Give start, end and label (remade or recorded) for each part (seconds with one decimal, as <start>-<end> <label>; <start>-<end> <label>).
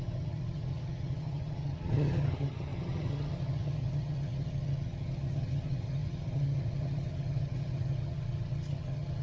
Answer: 0.0-9.2 remade